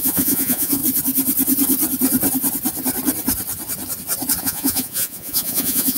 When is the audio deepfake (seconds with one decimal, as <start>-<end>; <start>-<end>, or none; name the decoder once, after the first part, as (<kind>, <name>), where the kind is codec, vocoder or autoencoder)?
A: 0.0-0.8 (vocoder, Vocos); 4.4-6.0